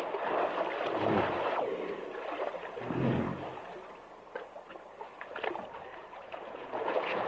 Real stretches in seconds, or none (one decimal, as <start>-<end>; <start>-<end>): 0.0-5.9